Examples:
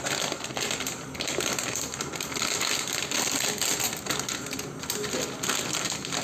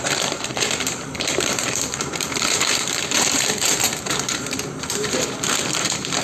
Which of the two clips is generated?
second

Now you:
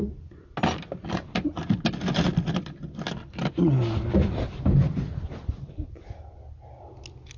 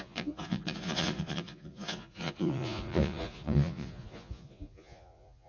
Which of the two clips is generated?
second